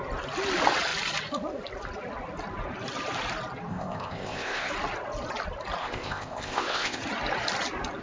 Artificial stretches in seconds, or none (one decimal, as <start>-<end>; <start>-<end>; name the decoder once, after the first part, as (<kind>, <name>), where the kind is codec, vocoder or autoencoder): 3.7-4.7 (codec, ZipCodec); 5.8-7.0